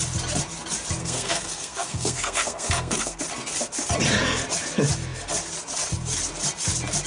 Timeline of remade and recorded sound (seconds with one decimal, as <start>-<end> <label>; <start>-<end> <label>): 0.0-1.0 recorded; 1.0-3.2 remade; 3.2-7.1 recorded